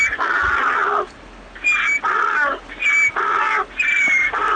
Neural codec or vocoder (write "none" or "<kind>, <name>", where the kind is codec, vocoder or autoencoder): none